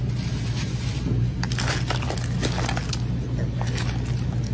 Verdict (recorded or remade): recorded